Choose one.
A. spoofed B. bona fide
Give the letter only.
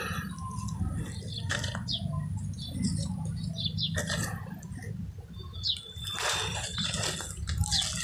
B